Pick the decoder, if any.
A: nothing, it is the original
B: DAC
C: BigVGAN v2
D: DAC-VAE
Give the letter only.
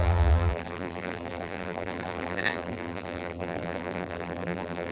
C